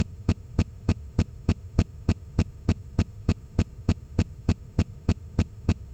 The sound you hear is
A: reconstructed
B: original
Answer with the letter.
A